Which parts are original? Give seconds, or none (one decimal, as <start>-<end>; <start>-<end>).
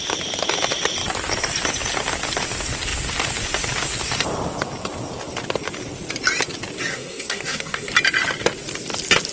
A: 0.0-6.9; 7.9-9.3